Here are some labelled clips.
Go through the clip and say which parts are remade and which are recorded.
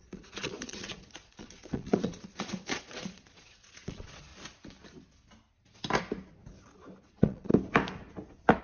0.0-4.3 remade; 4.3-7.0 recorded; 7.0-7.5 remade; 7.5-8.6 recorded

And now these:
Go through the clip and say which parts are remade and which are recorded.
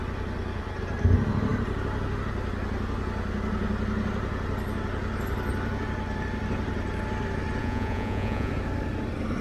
0.0-7.6 recorded; 7.6-8.5 remade; 8.5-9.4 recorded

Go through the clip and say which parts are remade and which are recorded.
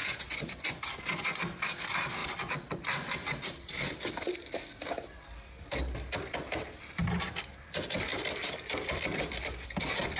0.0-0.8 remade; 0.8-10.2 recorded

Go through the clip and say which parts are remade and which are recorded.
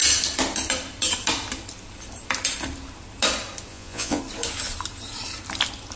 0.0-3.7 recorded; 3.7-4.2 remade; 4.2-6.0 recorded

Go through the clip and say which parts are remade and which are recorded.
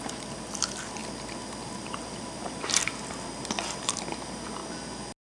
0.0-5.4 recorded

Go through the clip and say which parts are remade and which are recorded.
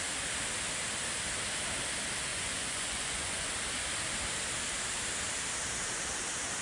0.0-2.3 recorded; 2.3-3.5 remade; 3.5-6.6 recorded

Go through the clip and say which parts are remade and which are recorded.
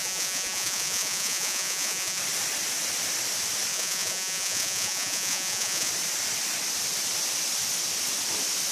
0.0-2.2 remade; 2.2-3.7 recorded; 3.7-5.9 remade; 5.9-8.7 recorded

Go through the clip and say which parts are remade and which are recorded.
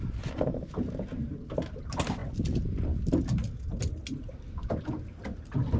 0.0-5.8 recorded